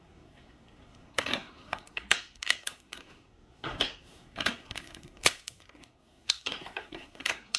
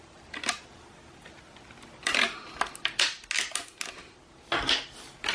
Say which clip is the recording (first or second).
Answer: second